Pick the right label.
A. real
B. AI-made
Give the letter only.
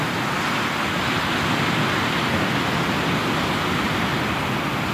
A